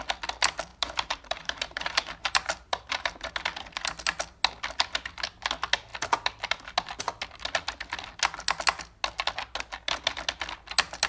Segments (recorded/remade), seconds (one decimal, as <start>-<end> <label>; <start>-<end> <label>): 0.0-0.7 recorded; 0.7-3.3 remade; 3.3-11.1 recorded